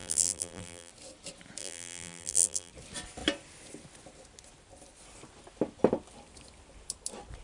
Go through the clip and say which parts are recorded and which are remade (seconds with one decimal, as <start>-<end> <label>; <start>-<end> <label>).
0.0-0.9 remade; 0.9-1.6 recorded; 1.6-2.7 remade; 2.7-7.4 recorded